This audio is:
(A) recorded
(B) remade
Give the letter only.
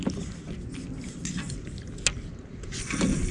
A